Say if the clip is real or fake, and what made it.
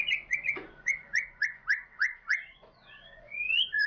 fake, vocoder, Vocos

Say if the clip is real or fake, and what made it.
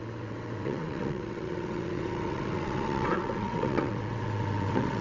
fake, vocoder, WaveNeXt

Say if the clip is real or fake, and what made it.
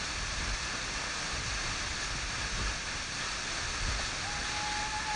real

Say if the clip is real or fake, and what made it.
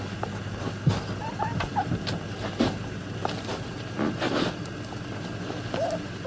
real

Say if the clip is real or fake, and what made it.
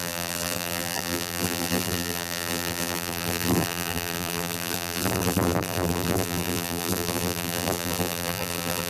fake, vocoder, BigVGAN v2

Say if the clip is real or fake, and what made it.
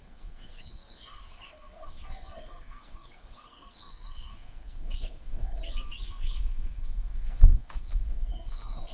fake, codec, SNAC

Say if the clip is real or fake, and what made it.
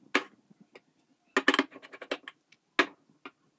real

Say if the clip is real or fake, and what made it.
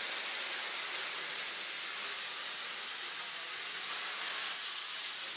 real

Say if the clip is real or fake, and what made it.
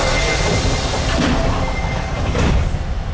real